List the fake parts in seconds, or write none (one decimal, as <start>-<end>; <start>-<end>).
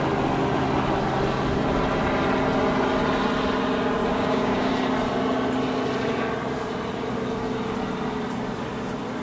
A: 4.1-4.7